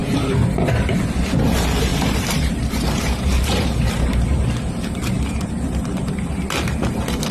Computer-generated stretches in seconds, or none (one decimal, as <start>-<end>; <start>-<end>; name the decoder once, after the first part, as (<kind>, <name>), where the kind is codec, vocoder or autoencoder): 0.0-0.9 (vocoder, BigVGAN v2); 1.9-6.3